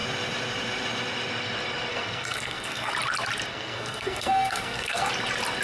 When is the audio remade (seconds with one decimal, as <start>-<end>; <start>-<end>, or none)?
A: 1.9-2.9; 3.5-5.1

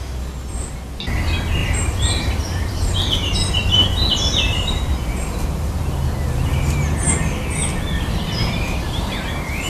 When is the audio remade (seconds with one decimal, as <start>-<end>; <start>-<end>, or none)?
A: 1.6-5.7

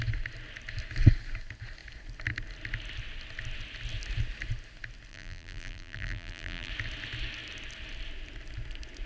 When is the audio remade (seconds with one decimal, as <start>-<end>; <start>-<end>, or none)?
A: 5.1-6.7

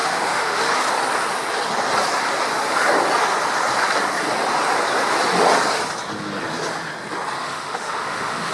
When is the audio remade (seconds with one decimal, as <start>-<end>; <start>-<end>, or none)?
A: 0.0-0.7; 7.4-8.5

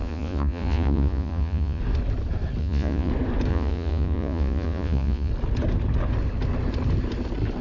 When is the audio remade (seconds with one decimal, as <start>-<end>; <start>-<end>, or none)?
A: 0.0-1.8; 2.6-3.1; 3.5-5.3

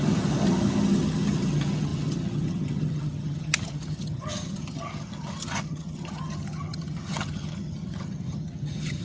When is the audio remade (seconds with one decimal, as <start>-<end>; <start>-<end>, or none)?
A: 0.0-9.0

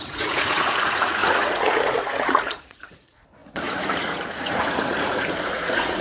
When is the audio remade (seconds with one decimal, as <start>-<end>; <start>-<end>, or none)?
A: 0.0-6.0

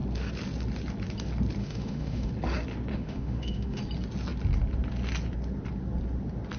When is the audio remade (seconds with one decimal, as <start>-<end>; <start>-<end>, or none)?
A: 1.6-2.3; 2.9-3.8